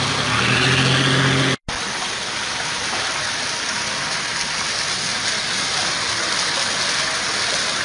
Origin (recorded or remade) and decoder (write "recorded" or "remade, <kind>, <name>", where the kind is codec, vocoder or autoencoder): recorded